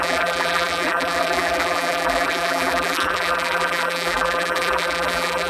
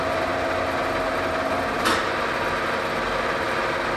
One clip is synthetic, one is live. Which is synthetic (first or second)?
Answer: first